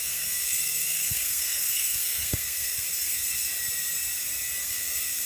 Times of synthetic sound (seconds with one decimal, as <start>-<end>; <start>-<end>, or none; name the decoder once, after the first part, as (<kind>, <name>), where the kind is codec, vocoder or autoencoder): 0.0-3.5 (codec, SNAC); 4.6-5.3